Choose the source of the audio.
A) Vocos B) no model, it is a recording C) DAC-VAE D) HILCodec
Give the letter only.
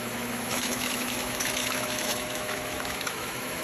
C